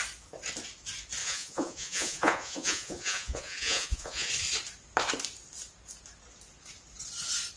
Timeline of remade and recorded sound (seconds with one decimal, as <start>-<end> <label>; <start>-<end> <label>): 0.0-1.2 recorded; 1.2-4.3 remade; 4.3-7.6 recorded